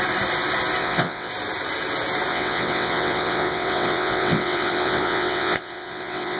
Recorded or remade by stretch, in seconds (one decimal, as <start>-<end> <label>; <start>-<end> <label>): 0.0-0.8 recorded; 0.8-1.3 remade; 1.3-2.3 recorded; 2.3-6.4 remade